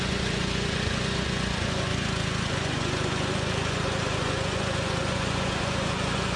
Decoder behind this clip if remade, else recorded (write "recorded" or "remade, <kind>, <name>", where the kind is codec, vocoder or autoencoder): remade, vocoder, Vocos